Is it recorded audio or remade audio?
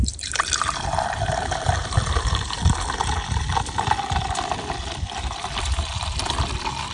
recorded